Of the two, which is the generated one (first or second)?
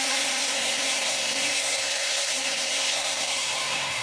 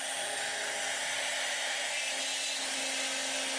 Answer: first